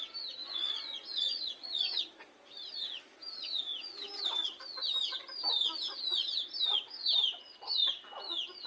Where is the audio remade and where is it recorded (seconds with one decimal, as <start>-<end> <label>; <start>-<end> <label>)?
0.0-0.4 recorded; 0.4-2.0 remade; 2.0-8.7 recorded